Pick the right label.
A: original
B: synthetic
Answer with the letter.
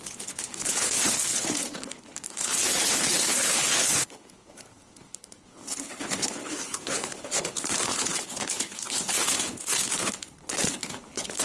B